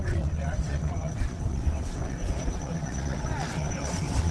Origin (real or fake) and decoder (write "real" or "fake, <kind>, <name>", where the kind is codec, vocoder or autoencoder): fake, vocoder, WaveNeXt